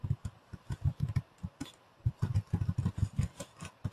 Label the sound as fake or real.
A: real